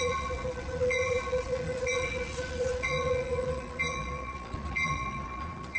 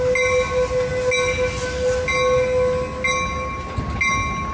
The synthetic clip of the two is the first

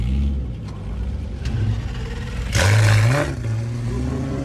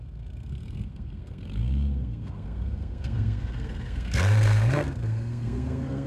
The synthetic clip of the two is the second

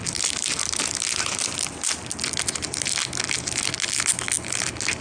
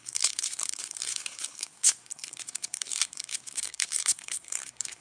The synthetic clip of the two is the second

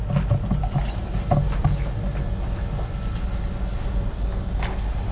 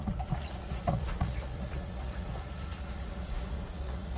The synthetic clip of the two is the second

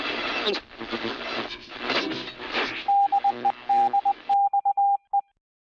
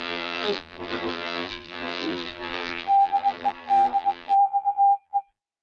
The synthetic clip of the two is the second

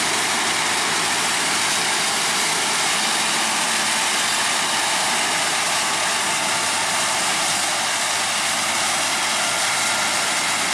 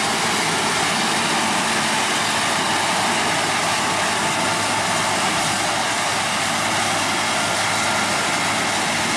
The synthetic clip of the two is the first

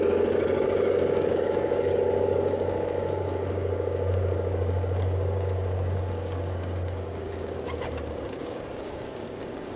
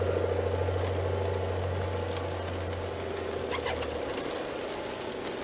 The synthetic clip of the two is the first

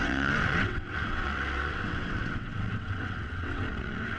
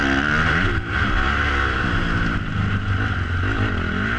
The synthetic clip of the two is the first